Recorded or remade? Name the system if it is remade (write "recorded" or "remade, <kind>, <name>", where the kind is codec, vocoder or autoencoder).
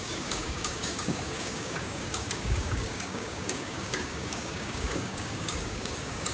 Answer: remade, codec, DAC